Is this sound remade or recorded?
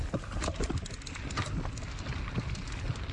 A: recorded